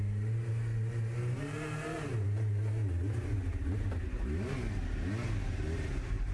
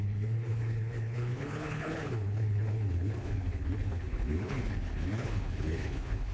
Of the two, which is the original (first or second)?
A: first